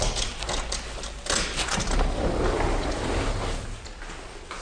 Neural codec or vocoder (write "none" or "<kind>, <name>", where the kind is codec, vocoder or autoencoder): none